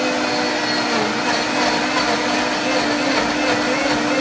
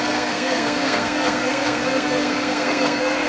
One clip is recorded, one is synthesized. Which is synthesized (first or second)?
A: second